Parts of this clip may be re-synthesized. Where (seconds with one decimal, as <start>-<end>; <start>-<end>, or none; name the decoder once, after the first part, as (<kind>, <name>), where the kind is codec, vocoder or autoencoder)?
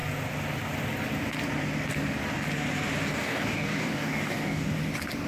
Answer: 3.1-4.8 (codec, DAC)